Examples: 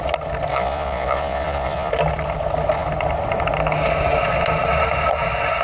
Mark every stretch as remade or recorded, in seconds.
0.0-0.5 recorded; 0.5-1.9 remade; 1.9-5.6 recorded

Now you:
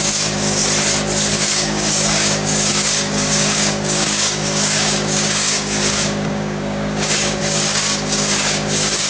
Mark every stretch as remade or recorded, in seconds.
0.0-0.6 remade; 0.6-1.3 recorded; 1.3-9.1 remade

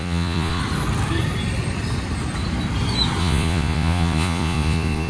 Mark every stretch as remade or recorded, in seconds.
0.0-0.6 remade; 0.6-3.2 recorded; 3.2-5.1 remade

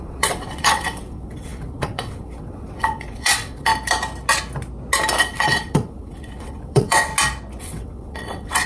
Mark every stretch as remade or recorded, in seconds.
0.0-3.7 remade; 3.7-5.2 recorded; 5.2-7.1 remade; 7.1-7.6 recorded; 7.6-8.7 remade

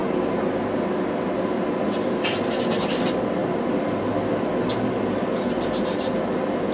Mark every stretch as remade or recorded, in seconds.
0.0-0.6 remade; 0.6-6.7 recorded

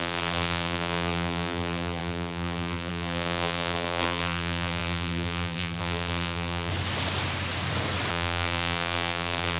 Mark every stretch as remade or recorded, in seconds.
0.0-6.7 remade; 6.7-8.1 recorded; 8.1-9.6 remade

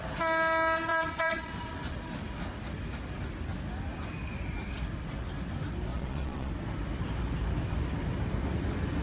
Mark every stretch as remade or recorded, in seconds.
0.0-0.9 recorded; 0.9-1.5 remade; 1.5-5.9 recorded; 5.9-6.5 remade; 6.5-9.0 recorded